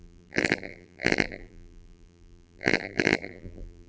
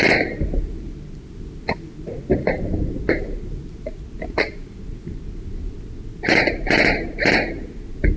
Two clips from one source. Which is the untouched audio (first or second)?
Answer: second